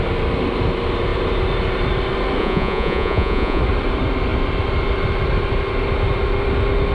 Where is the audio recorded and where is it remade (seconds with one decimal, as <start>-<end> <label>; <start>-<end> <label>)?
0.0-2.4 recorded; 2.4-3.6 remade; 3.6-6.9 recorded